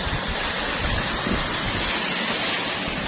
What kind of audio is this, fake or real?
real